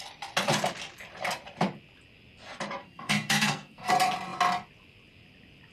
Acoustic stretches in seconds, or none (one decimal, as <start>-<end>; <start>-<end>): 0.0-2.8; 3.9-5.7